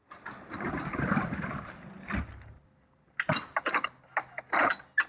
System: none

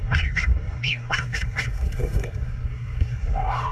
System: codec, SNAC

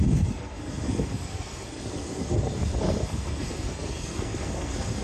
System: codec, SNAC